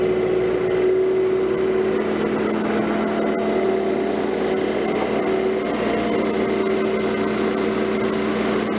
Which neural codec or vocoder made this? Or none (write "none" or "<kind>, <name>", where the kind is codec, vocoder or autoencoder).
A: none